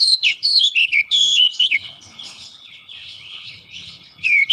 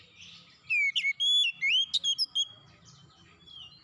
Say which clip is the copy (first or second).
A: first